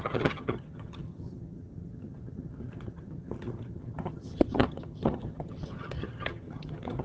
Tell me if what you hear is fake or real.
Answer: fake